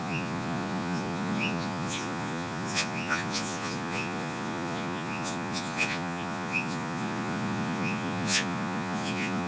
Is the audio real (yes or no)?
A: no